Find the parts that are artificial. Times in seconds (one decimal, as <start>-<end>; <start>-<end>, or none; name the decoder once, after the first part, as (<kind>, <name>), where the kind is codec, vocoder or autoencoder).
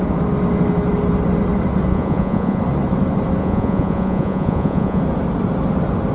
1.9-2.6 (vocoder, Vocos); 3.4-5.0